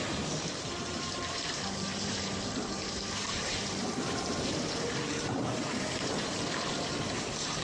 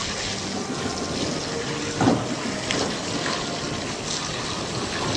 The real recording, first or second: second